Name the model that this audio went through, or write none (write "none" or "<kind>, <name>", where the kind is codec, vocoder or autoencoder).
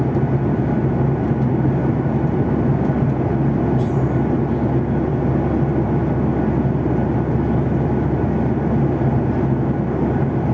none